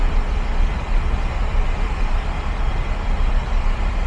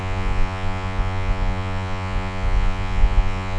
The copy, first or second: second